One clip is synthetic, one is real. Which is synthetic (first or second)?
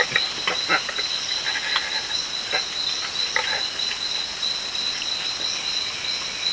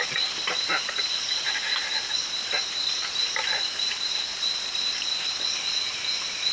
second